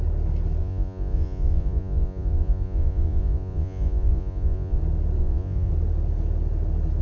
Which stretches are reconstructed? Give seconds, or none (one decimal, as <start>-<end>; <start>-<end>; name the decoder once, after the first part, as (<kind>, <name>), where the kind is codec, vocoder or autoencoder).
0.6-4.8 (vocoder, Vocos); 5.2-5.7